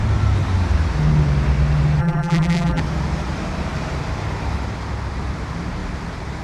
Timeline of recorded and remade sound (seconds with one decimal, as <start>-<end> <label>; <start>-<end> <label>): 0.0-2.0 recorded; 2.0-2.8 remade; 2.8-6.4 recorded